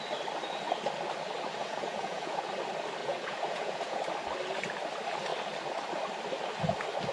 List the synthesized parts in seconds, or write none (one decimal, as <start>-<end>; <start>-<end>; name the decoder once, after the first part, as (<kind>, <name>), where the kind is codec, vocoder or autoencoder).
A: 1.6-2.5 (vocoder, Vocos); 3.0-4.0